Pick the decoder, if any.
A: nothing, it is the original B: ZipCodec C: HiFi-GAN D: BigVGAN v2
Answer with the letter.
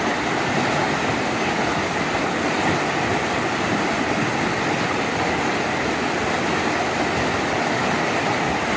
A